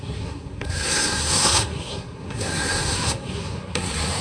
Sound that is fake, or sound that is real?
fake